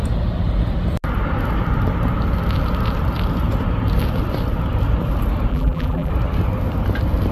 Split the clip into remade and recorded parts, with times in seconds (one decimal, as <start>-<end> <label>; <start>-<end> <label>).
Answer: 0.0-5.5 recorded; 5.5-6.1 remade; 6.1-7.3 recorded